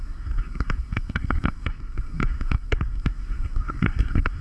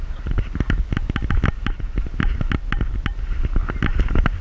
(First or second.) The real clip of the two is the second